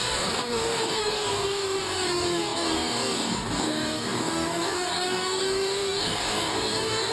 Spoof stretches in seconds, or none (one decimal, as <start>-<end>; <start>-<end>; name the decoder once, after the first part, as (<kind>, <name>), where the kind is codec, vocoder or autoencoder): 0.0-7.1 (codec, DAC)